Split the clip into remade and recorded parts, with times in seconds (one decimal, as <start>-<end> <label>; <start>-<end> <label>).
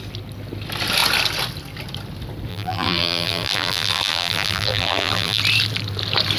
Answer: 0.0-2.5 recorded; 2.5-5.4 remade; 5.4-6.4 recorded